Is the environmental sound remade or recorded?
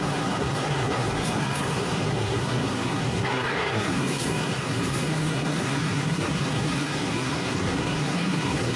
remade